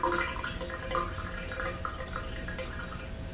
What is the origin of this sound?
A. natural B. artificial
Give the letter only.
A